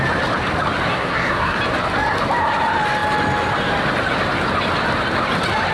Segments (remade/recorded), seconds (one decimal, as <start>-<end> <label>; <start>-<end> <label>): 0.0-0.9 recorded; 0.9-1.6 remade; 1.6-5.7 recorded